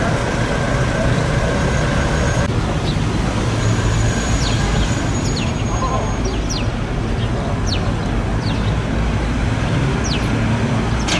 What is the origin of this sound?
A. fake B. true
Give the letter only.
B